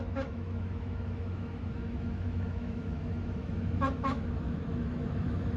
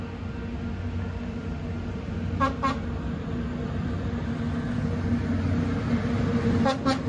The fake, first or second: first